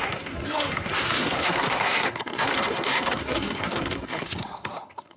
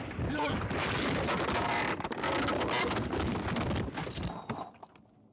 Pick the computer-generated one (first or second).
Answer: first